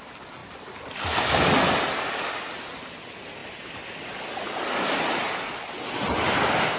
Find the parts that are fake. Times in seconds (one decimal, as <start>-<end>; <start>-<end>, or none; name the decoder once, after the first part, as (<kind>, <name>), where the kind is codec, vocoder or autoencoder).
none